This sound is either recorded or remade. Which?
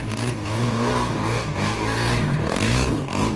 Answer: remade